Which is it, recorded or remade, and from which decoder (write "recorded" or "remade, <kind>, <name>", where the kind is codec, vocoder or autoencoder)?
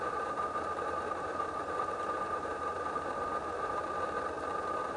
remade, vocoder, BigVGAN v2